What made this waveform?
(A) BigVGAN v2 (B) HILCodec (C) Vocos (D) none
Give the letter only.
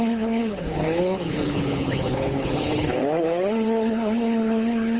B